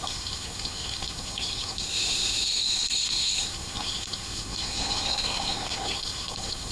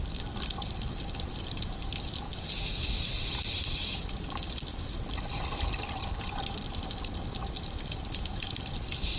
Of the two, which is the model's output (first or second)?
first